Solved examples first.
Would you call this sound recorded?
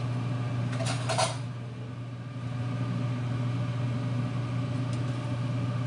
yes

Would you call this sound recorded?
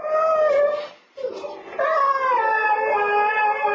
yes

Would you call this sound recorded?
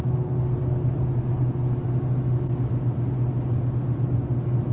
yes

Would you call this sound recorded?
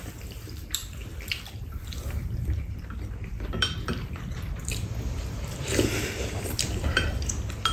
no